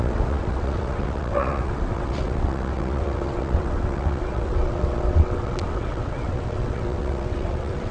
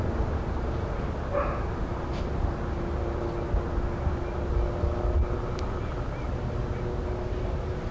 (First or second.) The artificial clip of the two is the first